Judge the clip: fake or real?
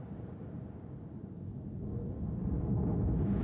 real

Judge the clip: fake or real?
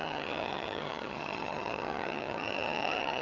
fake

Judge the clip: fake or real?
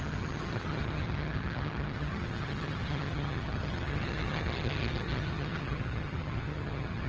fake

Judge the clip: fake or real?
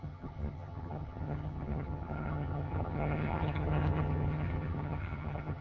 fake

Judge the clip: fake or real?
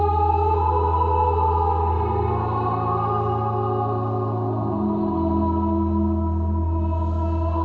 real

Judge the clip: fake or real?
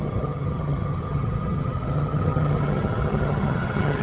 fake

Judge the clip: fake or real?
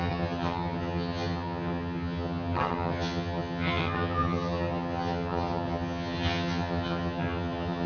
fake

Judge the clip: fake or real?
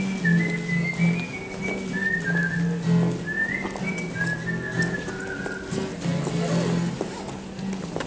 real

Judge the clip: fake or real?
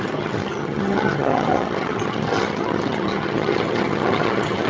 fake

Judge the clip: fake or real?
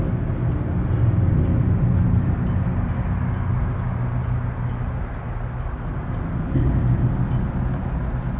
real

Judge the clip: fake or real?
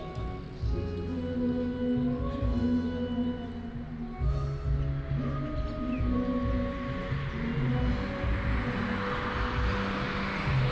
real